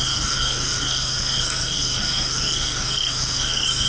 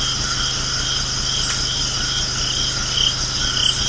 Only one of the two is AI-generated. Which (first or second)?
first